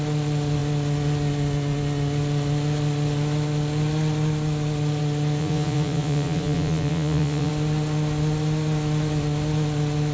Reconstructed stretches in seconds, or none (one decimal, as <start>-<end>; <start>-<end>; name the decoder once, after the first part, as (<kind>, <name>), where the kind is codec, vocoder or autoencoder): 5.4-7.5 (vocoder, Vocos)